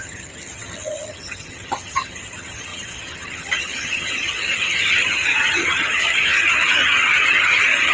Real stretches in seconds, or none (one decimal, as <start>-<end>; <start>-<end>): none